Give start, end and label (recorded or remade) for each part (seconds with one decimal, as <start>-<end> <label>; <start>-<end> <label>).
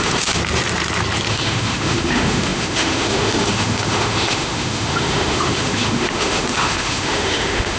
0.0-0.4 remade; 0.4-1.3 recorded; 1.3-7.8 remade